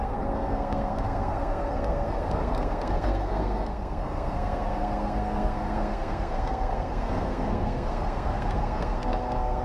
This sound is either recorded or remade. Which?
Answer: remade